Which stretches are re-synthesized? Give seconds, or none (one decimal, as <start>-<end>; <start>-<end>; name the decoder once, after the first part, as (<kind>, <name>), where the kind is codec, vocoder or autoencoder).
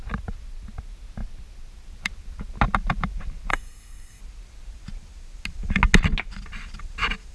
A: 3.5-4.2 (codec, SNAC)